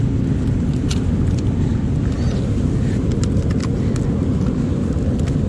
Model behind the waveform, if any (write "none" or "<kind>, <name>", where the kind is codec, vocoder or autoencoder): none